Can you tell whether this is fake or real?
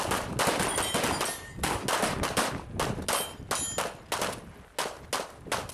real